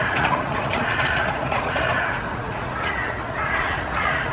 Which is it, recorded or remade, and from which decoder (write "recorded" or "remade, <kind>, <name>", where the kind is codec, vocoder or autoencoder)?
remade, vocoder, Vocos